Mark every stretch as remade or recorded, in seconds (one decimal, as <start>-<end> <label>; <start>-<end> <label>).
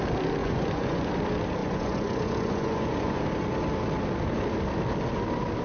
0.0-0.4 recorded; 0.4-1.1 remade; 1.1-1.6 recorded; 1.6-3.2 remade; 3.2-5.6 recorded